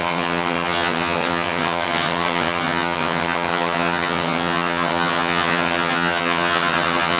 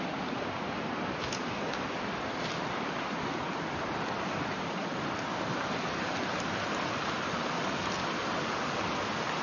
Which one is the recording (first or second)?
second